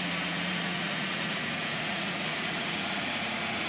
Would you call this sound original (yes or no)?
no